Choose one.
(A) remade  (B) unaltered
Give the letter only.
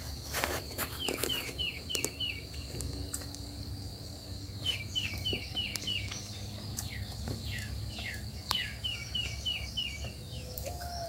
A